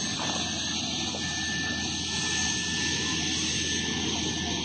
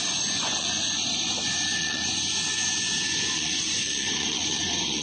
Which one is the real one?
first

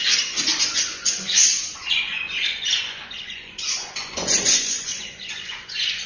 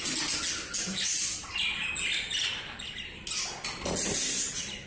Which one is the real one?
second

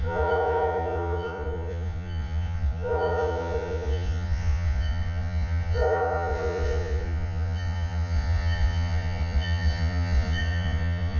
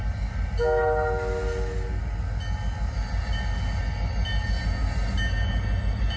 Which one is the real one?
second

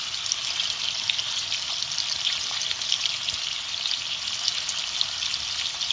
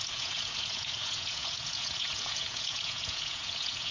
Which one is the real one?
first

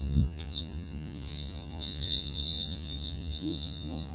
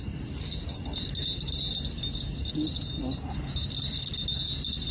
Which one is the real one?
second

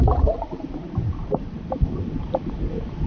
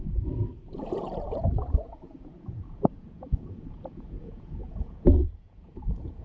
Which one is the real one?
first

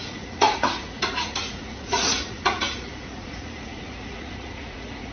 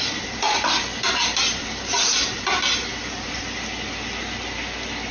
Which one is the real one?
second